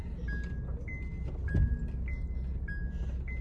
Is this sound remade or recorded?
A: recorded